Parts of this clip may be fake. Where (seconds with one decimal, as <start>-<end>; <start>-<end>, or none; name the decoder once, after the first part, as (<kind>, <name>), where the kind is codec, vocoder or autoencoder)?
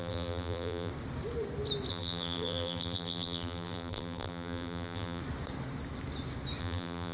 0.0-0.9 (vocoder, BigVGAN v2); 1.9-5.2; 6.6-7.1